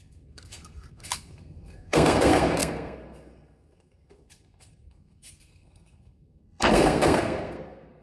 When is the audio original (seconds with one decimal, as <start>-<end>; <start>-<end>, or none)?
none